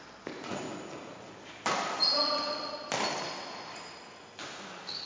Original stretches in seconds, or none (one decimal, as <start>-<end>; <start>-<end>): 0.0-5.1